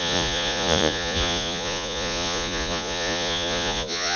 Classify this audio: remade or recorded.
remade